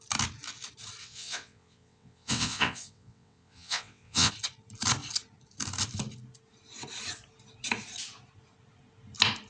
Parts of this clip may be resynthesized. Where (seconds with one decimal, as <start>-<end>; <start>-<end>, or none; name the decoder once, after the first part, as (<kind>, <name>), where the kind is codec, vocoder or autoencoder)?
1.0-4.3 (vocoder, WaveNeXt)